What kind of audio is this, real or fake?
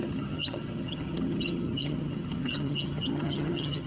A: fake